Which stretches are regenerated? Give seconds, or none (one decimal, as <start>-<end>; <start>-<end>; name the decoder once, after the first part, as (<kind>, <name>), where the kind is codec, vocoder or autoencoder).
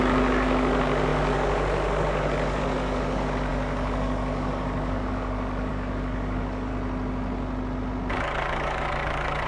0.0-6.7 (codec, DAC); 8.1-9.5